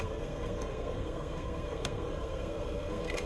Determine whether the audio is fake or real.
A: fake